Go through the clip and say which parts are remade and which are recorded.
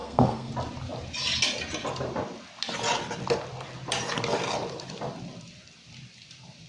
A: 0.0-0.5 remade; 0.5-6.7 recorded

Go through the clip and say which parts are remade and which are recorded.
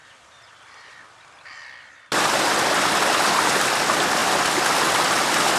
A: 0.0-5.6 recorded